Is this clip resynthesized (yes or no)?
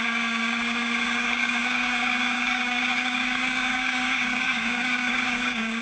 yes